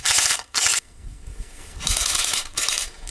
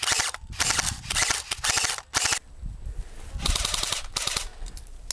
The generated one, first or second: first